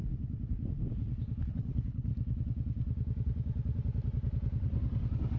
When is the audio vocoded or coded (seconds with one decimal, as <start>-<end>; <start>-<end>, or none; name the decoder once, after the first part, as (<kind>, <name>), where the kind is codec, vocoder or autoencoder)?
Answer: 1.5-2.1 (codec, HILCodec)